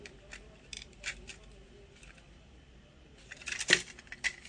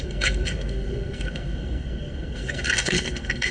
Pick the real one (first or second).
first